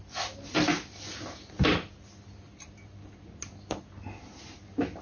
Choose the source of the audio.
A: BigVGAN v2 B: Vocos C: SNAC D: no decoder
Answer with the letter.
D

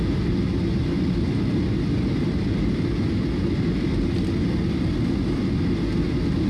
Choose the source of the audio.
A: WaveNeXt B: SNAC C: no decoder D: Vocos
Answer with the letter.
C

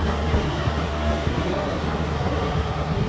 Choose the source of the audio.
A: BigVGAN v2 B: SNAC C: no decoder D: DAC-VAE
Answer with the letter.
B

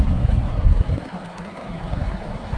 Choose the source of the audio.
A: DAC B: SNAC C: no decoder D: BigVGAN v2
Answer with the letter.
B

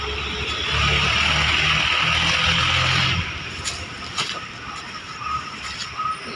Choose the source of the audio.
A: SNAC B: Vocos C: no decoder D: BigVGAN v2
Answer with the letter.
C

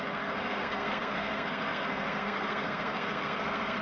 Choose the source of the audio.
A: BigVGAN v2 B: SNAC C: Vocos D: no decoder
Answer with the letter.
B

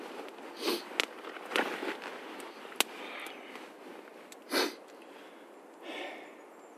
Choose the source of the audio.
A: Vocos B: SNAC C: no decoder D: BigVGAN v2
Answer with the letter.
C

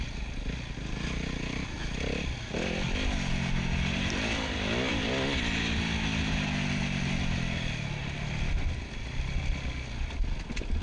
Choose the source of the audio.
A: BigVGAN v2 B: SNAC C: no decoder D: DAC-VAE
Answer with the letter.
C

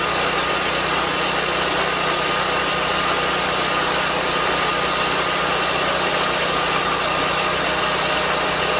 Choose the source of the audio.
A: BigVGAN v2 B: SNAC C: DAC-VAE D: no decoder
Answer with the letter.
D